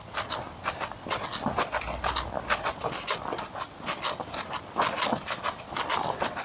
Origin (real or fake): real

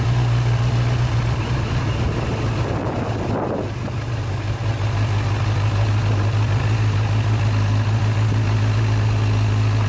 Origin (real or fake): real